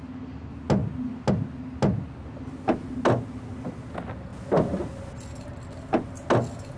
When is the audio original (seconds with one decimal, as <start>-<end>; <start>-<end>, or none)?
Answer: 0.0-6.8